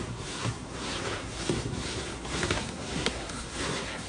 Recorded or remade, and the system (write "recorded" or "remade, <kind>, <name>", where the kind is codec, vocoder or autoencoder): remade, codec, SNAC